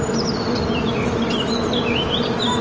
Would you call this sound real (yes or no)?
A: yes